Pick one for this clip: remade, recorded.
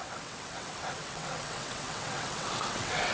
remade